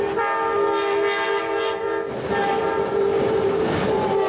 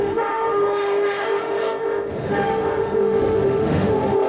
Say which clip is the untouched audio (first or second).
first